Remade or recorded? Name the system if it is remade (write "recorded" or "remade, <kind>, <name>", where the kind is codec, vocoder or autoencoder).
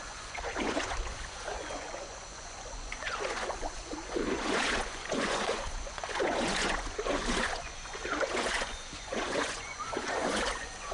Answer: remade, vocoder, Vocos